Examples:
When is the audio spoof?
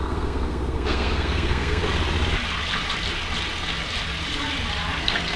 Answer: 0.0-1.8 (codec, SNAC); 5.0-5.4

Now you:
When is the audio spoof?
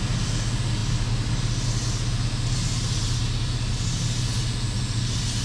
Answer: none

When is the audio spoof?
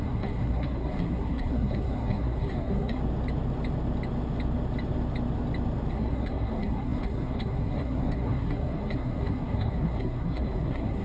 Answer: 0.0-3.0 (codec, SNAC); 5.9-11.0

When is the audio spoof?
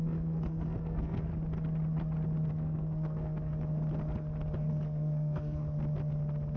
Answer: 0.0-1.3 (codec, SNAC); 2.5-3.5; 4.7-5.6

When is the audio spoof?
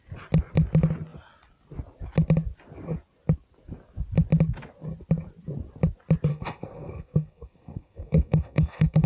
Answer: 6.3-9.1 (codec, SNAC)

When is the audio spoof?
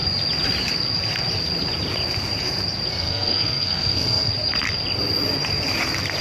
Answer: 2.9-4.3 (codec, SNAC)